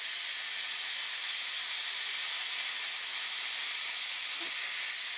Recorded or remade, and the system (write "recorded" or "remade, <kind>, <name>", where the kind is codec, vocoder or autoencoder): recorded